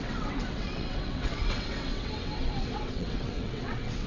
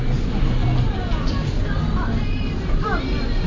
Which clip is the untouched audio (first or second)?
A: second